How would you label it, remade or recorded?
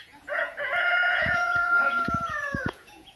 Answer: remade